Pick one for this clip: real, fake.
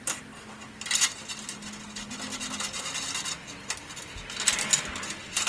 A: real